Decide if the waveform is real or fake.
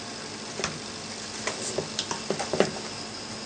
real